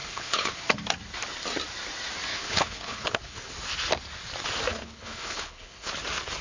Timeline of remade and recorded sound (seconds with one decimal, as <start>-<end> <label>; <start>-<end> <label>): 0.0-0.6 remade; 0.6-2.3 recorded; 2.3-3.5 remade; 3.5-4.7 recorded; 4.7-5.9 remade; 5.9-6.4 recorded